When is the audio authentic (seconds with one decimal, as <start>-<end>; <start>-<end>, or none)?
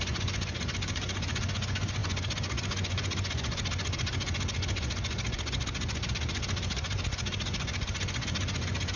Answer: none